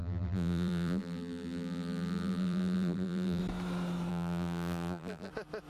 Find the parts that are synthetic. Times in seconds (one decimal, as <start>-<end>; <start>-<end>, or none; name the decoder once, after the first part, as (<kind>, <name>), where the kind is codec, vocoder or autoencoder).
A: 0.0-3.4 (vocoder, BigVGAN v2); 4.1-5.3